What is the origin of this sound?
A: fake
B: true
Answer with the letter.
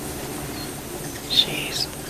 B